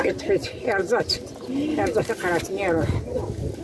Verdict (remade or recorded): recorded